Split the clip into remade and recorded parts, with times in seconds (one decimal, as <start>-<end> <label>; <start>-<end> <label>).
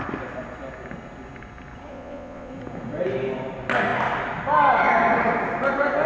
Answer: 0.0-1.9 recorded; 1.9-2.5 remade; 2.5-6.1 recorded